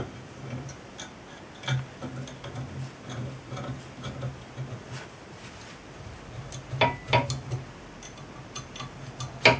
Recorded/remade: recorded